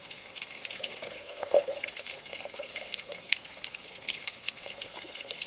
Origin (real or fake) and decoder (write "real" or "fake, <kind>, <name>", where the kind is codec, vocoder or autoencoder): fake, codec, SNAC